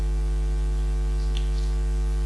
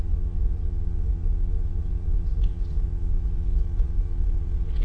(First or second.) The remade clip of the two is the second